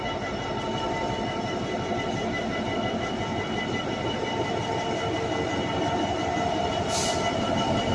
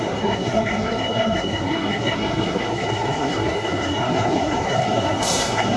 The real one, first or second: first